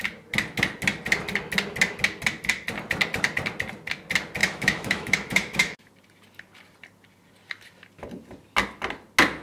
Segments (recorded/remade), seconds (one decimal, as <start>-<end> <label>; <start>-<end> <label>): 0.0-4.4 recorded; 4.4-5.9 remade; 5.9-9.4 recorded